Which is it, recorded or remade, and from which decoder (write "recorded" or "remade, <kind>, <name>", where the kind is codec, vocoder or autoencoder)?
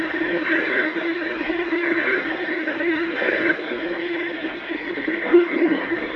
remade, codec, SNAC